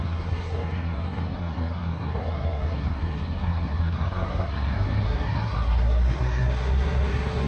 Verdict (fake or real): fake